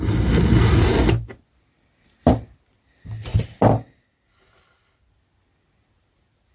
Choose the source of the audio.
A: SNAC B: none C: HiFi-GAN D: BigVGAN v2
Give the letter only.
B